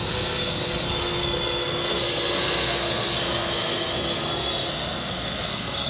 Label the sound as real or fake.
fake